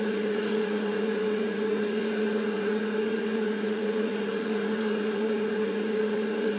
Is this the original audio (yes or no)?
no